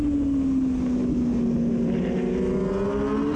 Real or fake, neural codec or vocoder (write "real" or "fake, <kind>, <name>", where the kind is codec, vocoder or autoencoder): real